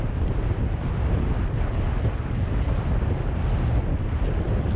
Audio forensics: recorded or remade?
recorded